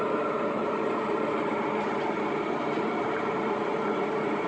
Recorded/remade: remade